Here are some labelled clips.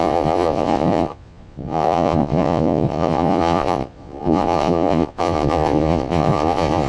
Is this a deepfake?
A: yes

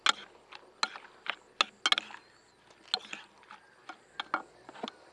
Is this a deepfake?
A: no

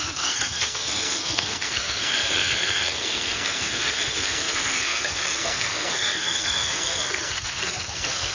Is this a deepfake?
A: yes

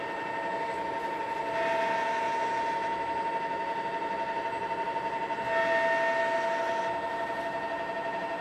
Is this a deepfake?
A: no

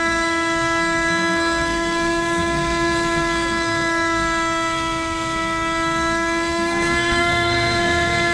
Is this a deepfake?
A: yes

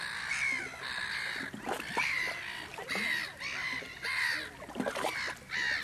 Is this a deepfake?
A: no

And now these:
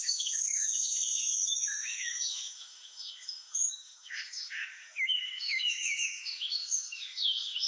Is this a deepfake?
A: yes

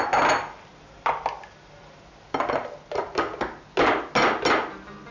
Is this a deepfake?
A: no